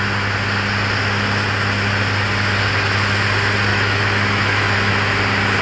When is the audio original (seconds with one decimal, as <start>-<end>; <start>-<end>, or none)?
0.0-3.7; 4.9-5.6